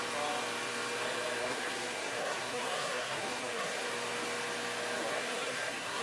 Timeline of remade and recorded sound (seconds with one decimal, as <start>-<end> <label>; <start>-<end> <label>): 0.0-1.4 recorded; 1.4-3.9 remade; 3.9-5.1 recorded; 5.1-6.0 remade